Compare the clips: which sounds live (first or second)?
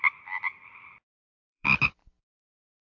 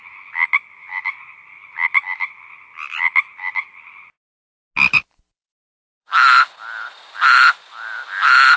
second